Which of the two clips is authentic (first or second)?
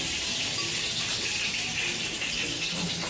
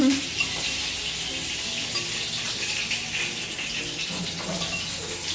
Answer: second